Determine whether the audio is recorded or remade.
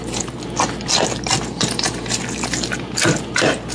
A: recorded